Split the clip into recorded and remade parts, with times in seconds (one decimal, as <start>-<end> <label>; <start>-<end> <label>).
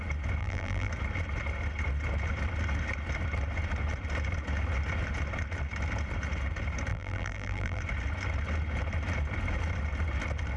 0.0-0.4 recorded; 0.4-0.9 remade; 0.9-6.9 recorded; 6.9-7.8 remade; 7.8-10.6 recorded